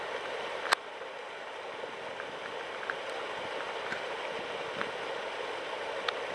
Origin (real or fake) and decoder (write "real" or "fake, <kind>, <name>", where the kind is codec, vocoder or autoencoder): real